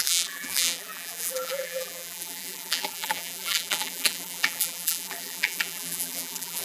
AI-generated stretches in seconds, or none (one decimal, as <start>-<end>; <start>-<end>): 0.0-6.6